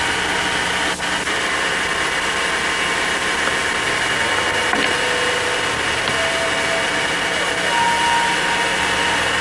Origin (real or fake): real